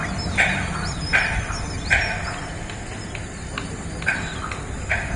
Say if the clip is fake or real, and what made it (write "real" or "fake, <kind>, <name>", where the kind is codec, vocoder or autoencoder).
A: real